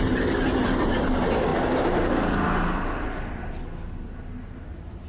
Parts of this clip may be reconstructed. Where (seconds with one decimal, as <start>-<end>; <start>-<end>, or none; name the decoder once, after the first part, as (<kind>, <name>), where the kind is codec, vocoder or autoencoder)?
none